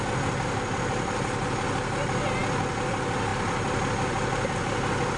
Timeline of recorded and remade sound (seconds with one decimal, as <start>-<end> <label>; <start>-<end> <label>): 0.0-5.2 recorded